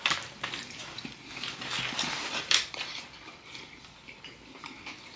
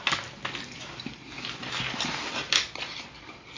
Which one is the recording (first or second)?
second